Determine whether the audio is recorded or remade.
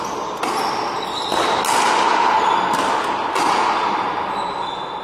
recorded